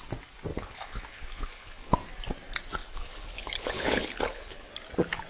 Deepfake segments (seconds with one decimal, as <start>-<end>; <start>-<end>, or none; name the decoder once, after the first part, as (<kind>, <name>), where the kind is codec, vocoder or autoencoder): 0.5-1.9 (codec, HILCodec); 2.8-4.7